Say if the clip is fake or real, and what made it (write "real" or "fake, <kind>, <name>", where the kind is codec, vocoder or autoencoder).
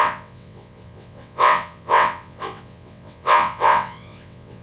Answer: fake, vocoder, WaveNeXt